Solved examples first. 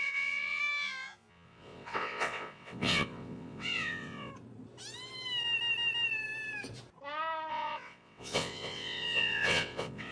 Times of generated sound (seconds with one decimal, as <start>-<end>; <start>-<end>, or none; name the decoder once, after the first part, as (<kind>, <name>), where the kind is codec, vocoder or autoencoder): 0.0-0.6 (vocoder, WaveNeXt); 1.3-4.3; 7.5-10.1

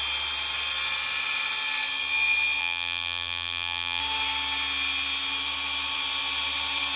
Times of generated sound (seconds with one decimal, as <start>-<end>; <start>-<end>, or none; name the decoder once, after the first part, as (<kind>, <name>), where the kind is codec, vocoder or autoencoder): 2.6-4.0 (vocoder, BigVGAN v2)

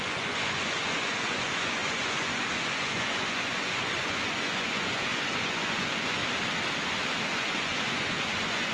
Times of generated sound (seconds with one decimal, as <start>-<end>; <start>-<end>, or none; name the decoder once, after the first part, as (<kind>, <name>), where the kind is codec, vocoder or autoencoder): 0.0-6.2 (vocoder, Vocos); 7.2-8.7

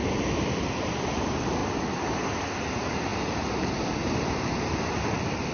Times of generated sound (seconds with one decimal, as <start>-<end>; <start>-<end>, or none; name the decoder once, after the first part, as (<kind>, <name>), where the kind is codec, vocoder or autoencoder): 0.0-1.6 (vocoder, BigVGAN v2); 2.7-5.5